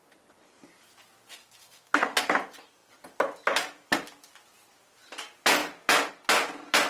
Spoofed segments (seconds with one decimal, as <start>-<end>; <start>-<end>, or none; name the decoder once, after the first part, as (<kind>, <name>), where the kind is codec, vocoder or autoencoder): 1.4-2.2 (codec, SNAC)